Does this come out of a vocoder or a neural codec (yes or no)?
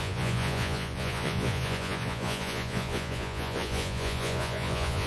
yes